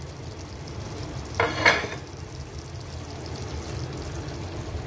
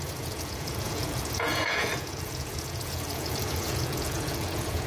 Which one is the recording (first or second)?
first